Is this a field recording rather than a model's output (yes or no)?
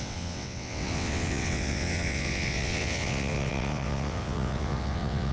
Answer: no